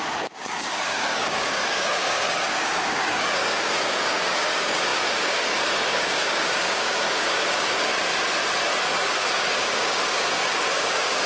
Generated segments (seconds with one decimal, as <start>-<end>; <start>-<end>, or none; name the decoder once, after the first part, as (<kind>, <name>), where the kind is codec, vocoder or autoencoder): 0.0-7.9 (codec, DAC); 9.0-11.3